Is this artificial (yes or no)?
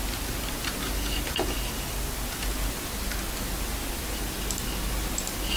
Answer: no